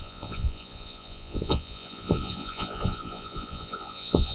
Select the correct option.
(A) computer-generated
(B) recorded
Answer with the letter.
A